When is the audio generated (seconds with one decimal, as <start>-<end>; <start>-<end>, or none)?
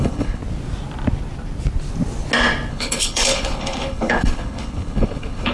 0.0-0.4; 2.7-5.5